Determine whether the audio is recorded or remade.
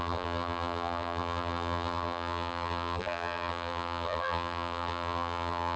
remade